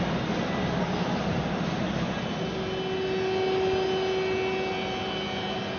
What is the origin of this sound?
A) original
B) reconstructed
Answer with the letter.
A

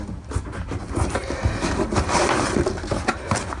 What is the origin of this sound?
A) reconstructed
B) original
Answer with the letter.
B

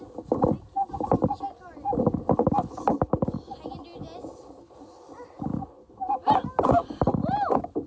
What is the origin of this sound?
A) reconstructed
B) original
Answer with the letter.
B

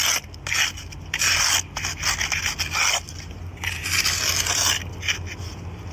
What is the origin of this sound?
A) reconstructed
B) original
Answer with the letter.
B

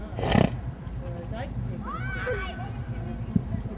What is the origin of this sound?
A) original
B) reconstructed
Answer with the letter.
A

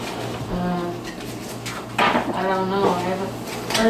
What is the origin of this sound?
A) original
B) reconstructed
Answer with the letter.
A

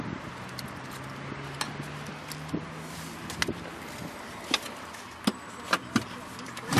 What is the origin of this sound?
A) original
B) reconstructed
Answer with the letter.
A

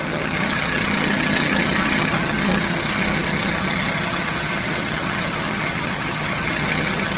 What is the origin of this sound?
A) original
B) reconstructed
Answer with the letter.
B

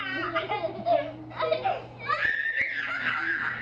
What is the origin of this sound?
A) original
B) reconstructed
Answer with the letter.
A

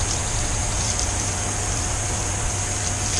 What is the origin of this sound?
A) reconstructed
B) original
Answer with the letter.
B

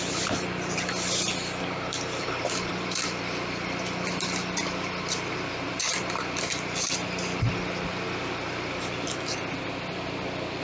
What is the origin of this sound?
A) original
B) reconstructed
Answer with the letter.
A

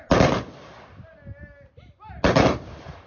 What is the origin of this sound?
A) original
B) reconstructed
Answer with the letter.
A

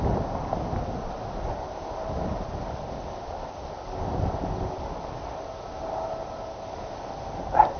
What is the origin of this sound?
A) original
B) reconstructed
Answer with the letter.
A